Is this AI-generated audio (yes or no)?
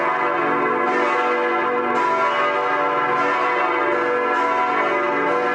no